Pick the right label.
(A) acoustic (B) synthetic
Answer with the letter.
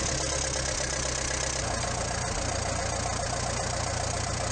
A